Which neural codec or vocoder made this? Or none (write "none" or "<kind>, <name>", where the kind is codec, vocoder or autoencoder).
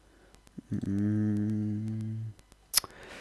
none